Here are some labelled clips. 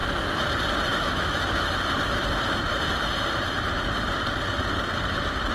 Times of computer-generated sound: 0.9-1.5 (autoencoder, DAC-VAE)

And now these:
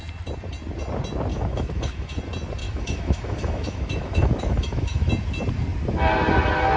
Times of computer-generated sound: 1.3-2.2 (autoencoder, DAC-VAE); 2.6-5.1

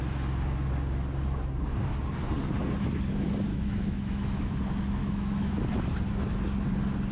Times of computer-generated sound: 3.5-4.5 (autoencoder, DAC-VAE); 5.0-5.6

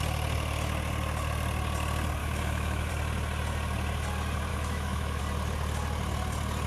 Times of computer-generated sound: 2.2-2.9 (autoencoder, DAC-VAE); 4.5-5.2

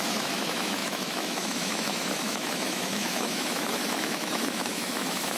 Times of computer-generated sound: 0.0-5.4 (autoencoder, DAC-VAE)

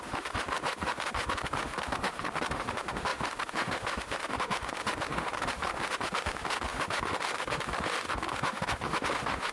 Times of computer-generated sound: 0.0-9.5 (autoencoder, DAC-VAE)

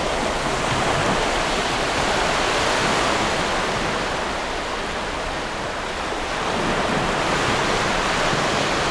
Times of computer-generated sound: none

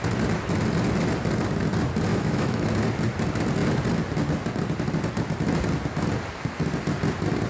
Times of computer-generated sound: 2.1-2.7 (autoencoder, DAC-VAE)